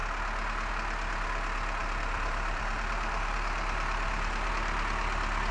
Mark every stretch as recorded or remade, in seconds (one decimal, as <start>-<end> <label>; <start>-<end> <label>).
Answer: 0.0-1.8 recorded; 1.8-4.5 remade; 4.5-5.5 recorded